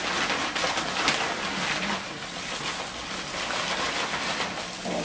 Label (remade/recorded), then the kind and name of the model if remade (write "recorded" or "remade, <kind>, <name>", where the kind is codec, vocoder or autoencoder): recorded